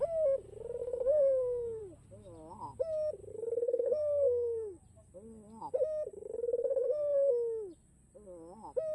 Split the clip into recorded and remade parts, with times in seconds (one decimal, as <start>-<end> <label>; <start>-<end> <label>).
0.0-0.8 recorded; 0.8-1.8 remade; 1.8-3.3 recorded; 3.3-4.8 remade; 4.8-6.1 recorded; 6.1-7.3 remade; 7.3-8.9 recorded